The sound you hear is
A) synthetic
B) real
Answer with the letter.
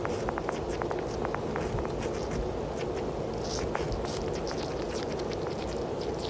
B